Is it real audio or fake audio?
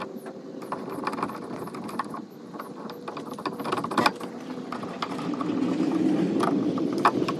real